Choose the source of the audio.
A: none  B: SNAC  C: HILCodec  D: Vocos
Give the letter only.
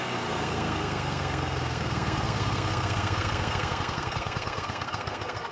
B